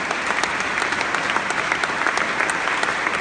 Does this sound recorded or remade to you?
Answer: recorded